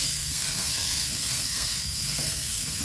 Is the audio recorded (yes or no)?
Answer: no